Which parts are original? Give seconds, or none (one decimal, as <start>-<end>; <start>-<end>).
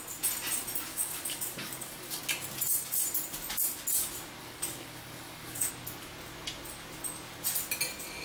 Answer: 0.0-0.9; 2.2-4.4; 5.7-8.2